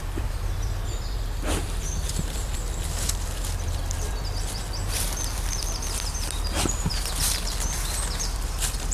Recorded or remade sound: remade